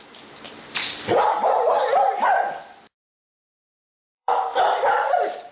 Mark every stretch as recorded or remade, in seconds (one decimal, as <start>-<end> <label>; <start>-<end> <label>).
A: 0.0-2.1 remade; 2.1-3.9 recorded; 3.9-5.5 remade